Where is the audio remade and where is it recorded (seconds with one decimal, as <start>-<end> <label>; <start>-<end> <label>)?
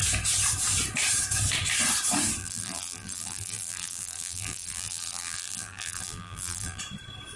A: 0.0-2.4 recorded; 2.4-6.8 remade; 6.8-7.4 recorded